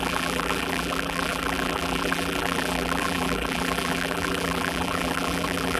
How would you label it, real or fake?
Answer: fake